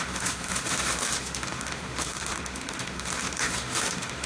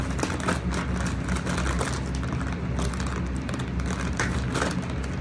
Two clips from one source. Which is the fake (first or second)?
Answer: first